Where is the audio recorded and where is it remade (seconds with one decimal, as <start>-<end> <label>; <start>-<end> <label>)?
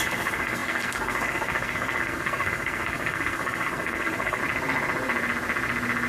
0.0-4.4 remade; 4.4-6.1 recorded